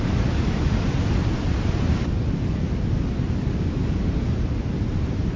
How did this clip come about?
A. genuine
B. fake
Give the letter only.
A